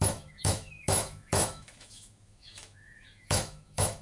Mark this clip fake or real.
fake